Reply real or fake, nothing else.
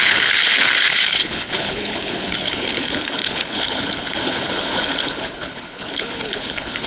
fake